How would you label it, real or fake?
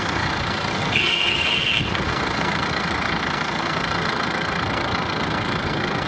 fake